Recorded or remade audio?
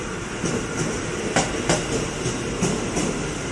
recorded